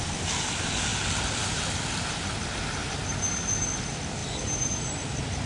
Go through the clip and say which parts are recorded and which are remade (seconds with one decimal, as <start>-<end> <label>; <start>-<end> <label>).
0.0-5.5 recorded